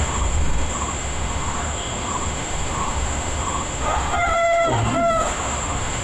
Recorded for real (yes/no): no